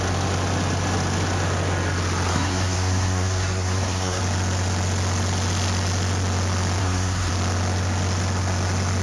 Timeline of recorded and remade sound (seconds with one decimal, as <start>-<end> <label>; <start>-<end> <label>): 0.0-2.3 recorded; 2.3-4.2 remade; 4.2-6.8 recorded; 6.8-7.3 remade; 7.3-9.0 recorded